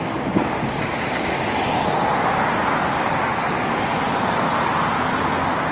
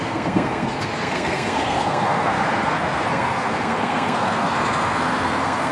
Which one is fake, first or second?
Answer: second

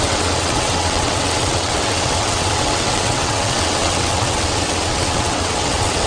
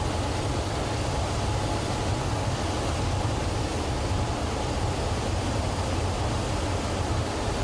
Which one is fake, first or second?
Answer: first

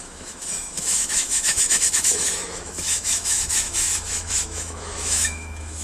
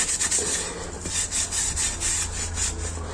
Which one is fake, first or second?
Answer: first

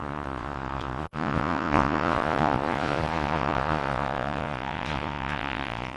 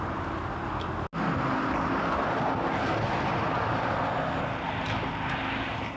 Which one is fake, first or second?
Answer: first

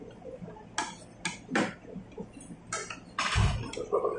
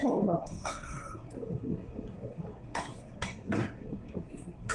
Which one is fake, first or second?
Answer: second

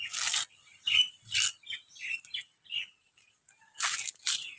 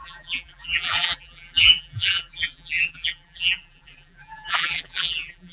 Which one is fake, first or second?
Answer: second